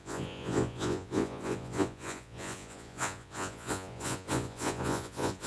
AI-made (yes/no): yes